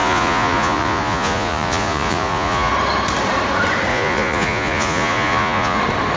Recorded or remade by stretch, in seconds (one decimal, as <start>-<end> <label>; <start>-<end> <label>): 0.0-2.7 remade; 2.7-3.9 recorded; 3.9-5.8 remade; 5.8-6.2 recorded